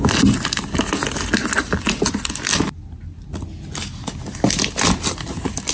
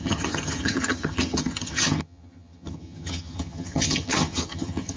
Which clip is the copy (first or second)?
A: second